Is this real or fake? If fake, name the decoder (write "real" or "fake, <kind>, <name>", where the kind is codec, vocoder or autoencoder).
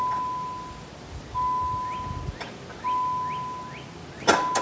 real